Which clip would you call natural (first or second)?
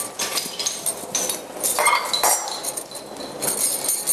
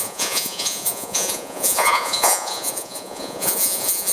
first